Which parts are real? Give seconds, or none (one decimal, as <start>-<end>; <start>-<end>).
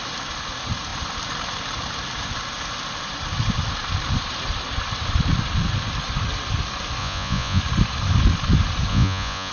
0.0-7.0; 7.6-8.9